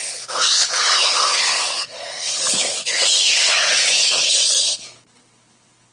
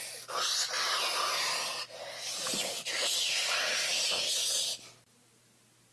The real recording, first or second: second